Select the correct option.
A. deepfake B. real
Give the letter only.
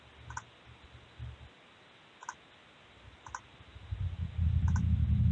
B